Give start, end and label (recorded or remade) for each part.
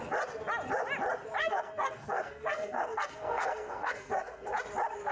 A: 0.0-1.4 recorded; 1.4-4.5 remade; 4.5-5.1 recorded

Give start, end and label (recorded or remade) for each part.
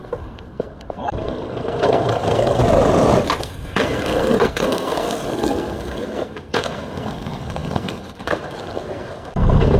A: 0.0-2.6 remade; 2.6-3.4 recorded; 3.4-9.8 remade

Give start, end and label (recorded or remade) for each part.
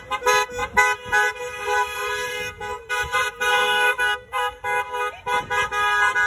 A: 0.0-2.3 recorded; 2.3-2.9 remade; 2.9-3.5 recorded; 3.5-5.1 remade; 5.1-6.3 recorded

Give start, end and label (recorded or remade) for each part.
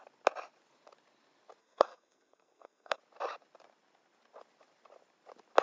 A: 0.0-1.6 recorded; 1.6-3.0 remade; 3.0-5.6 recorded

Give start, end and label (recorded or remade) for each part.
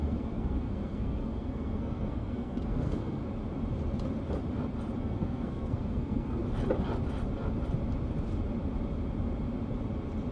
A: 0.0-3.2 remade; 3.2-5.0 recorded; 5.0-6.4 remade; 6.4-10.3 recorded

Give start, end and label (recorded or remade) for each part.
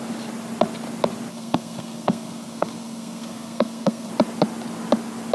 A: 0.0-1.3 recorded; 1.3-4.1 remade; 4.1-5.3 recorded